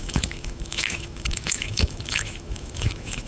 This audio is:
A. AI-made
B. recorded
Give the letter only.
A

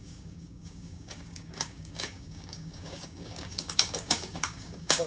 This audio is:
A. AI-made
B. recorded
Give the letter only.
A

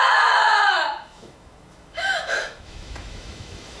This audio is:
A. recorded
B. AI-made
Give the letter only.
B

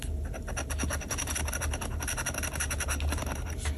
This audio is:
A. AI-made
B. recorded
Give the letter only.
B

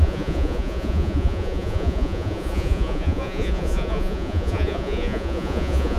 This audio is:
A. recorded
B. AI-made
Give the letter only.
B